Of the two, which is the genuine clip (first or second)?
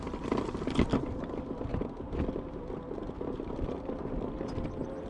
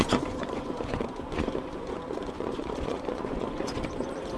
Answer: first